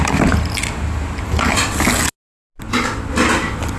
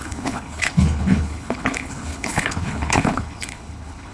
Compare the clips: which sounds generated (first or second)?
second